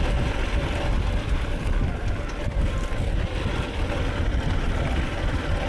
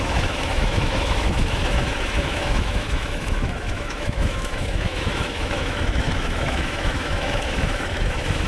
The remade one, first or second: second